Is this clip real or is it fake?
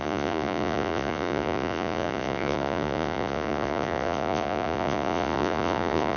fake